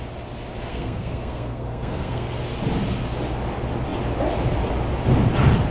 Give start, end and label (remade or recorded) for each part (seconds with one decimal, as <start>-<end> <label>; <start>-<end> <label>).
0.0-0.7 recorded; 0.7-2.4 remade; 2.4-5.7 recorded